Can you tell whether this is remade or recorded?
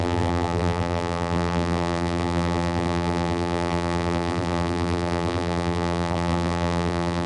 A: remade